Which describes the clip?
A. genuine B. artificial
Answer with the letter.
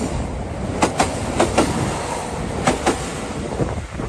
A